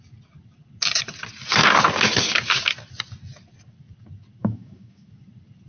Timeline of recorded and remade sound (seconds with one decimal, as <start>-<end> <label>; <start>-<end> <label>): 0.0-4.4 recorded; 4.4-5.1 remade; 5.1-5.7 recorded